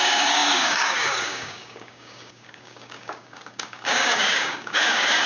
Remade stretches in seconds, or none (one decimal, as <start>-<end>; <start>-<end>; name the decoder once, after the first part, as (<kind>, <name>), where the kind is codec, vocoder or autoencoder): 0.0-5.3 (codec, DAC)